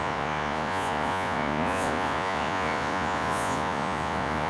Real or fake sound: fake